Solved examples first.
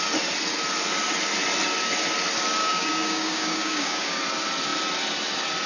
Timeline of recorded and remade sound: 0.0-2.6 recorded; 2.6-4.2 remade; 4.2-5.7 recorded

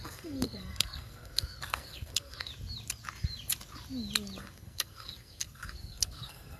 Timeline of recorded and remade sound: 0.0-2.5 remade; 2.5-4.4 recorded; 4.4-6.6 remade

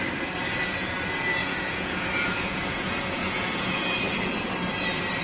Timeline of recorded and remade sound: 0.0-1.4 recorded; 1.4-3.8 remade; 3.8-5.2 recorded

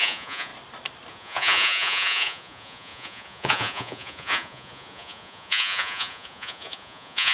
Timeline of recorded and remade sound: 0.0-0.5 remade; 0.5-1.1 recorded; 1.1-7.3 remade

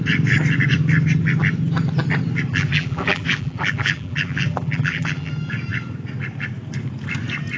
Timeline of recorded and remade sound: 0.0-2.5 recorded; 2.5-5.3 remade; 5.3-7.6 recorded